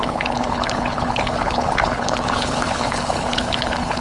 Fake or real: fake